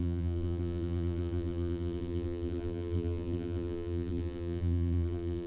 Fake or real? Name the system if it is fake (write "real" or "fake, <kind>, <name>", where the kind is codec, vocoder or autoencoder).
fake, vocoder, BigVGAN v2